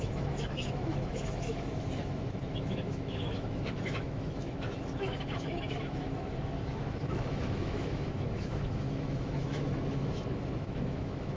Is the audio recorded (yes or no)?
no